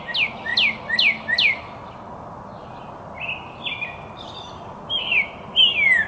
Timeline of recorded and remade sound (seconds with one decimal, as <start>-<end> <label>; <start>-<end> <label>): 0.0-6.1 recorded